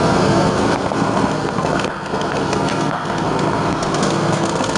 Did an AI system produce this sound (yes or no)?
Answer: yes